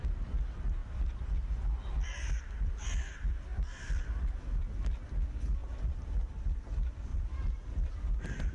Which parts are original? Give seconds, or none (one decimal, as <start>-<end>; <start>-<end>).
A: 0.0-0.8; 1.3-5.6; 6.4-7.1